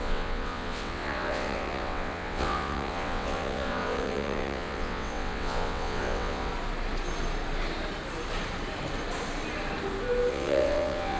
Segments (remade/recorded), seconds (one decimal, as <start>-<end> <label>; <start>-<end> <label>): 0.0-6.5 remade; 6.5-10.3 recorded; 10.3-11.2 remade